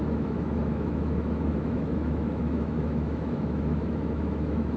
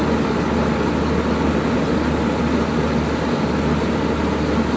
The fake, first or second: first